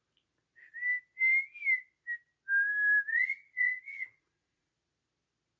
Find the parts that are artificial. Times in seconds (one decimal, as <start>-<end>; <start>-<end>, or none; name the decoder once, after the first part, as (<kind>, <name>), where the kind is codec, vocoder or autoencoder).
3.1-4.7 (vocoder, Vocos)

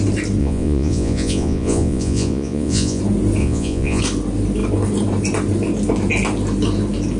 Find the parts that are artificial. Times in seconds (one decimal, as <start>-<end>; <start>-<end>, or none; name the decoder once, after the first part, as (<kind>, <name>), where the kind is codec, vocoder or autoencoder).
0.4-3.0 (vocoder, Vocos); 3.4-4.0

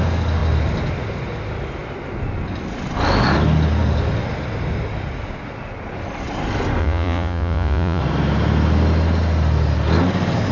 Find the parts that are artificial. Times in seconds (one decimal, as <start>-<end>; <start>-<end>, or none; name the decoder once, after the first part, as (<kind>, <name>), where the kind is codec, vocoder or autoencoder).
6.8-8.0 (vocoder, Vocos)

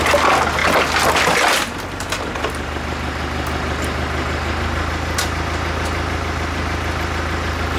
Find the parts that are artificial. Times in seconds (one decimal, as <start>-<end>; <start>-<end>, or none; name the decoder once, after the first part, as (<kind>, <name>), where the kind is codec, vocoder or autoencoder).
none

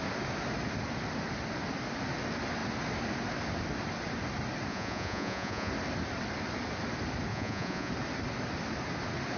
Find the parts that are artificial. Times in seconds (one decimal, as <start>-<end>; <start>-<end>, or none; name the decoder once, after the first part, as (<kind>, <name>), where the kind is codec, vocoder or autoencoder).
4.7-5.7 (vocoder, Vocos); 7.3-7.9